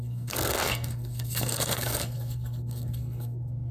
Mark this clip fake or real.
fake